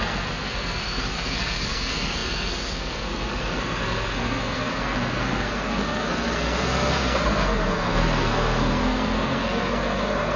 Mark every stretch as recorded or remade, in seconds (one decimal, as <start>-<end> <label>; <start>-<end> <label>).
0.0-10.4 remade